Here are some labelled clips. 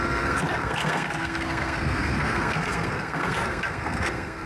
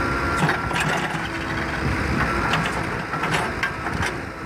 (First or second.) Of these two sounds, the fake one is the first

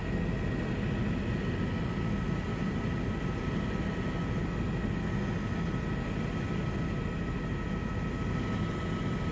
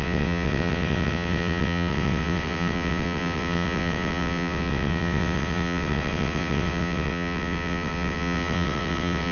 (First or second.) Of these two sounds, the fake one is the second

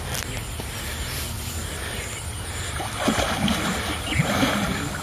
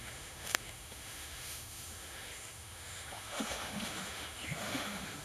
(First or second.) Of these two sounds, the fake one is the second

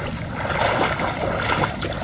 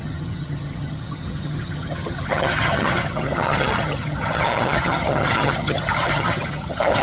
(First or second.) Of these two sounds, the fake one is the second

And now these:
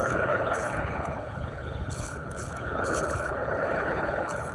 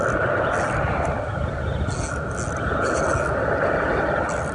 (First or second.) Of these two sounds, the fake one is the first